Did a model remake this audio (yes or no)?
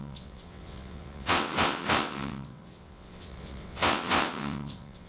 yes